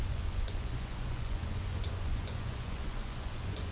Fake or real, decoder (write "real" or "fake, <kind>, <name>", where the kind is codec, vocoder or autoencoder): fake, vocoder, Vocos